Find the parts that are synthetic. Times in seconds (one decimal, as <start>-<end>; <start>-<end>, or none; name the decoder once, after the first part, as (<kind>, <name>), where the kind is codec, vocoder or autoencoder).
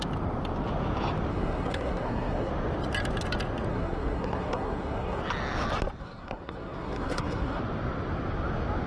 1.3-2.5 (codec, SNAC); 3.7-5.2; 6.0-7.6